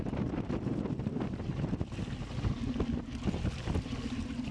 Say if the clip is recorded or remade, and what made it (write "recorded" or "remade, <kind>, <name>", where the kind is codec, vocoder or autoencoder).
recorded